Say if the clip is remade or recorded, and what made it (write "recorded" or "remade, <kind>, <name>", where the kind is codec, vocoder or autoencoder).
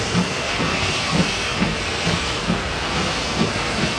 remade, codec, SNAC